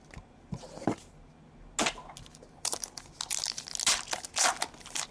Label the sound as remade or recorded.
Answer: recorded